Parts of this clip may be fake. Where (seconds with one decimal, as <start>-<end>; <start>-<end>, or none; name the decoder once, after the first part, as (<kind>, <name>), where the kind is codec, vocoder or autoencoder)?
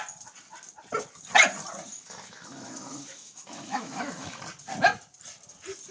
1.9-4.4 (autoencoder, DAC-VAE)